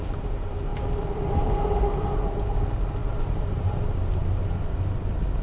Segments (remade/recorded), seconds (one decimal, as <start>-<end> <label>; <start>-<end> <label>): 0.0-0.7 recorded; 0.7-1.8 remade; 1.8-3.0 recorded; 3.0-3.8 remade; 3.8-5.4 recorded